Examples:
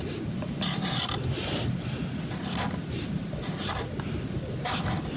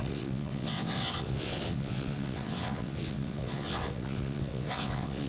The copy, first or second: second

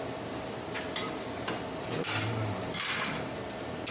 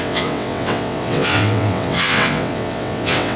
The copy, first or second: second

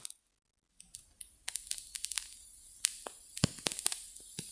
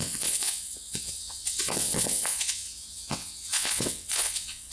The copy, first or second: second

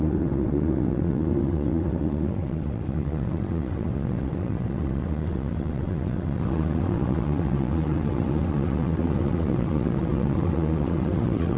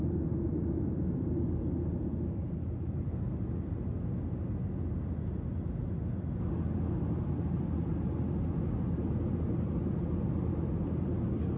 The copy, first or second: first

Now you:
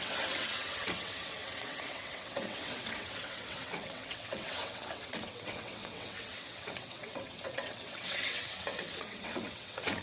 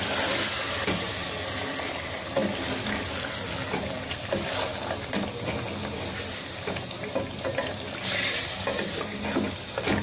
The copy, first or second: first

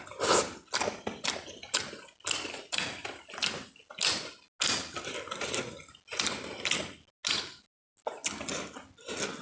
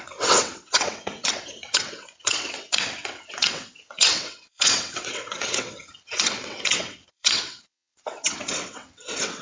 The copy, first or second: second